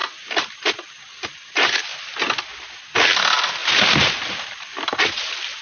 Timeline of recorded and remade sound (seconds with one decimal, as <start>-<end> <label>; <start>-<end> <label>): 0.0-5.6 recorded